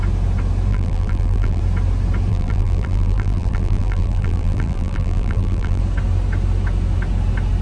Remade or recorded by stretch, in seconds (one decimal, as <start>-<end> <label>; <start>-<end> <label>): 0.0-0.7 recorded; 0.7-1.6 remade; 1.6-2.3 recorded; 2.3-5.8 remade; 5.8-7.6 recorded